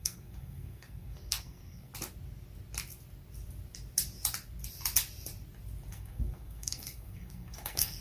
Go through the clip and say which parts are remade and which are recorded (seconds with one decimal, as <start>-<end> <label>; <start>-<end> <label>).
0.0-1.9 remade; 1.9-5.9 recorded; 5.9-8.0 remade